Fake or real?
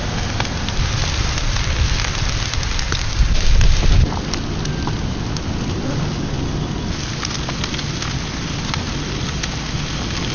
real